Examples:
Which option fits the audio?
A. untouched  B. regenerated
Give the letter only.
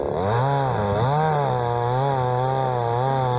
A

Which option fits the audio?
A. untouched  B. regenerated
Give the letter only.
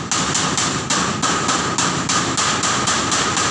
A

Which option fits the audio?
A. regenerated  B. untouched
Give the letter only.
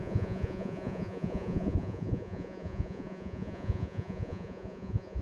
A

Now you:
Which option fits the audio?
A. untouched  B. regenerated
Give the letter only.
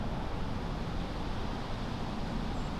A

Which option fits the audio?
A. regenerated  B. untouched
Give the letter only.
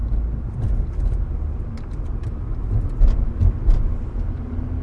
B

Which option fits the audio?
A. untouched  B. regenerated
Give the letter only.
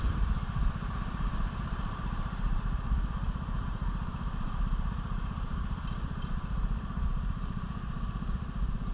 B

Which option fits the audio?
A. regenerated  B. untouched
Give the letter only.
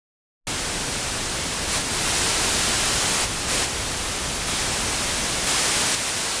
B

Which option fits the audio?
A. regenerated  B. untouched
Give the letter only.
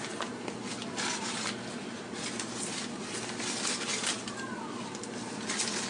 B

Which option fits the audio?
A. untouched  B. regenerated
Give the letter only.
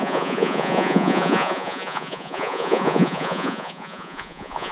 B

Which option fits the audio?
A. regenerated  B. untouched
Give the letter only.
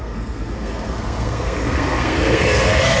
A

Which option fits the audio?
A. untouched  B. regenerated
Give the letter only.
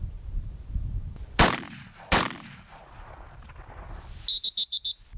A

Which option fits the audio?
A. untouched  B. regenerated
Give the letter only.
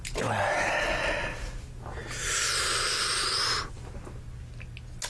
A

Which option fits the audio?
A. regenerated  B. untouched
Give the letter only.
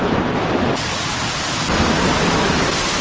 B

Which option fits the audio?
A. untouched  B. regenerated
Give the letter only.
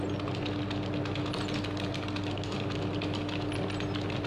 A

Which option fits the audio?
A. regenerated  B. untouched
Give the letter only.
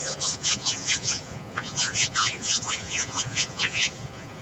A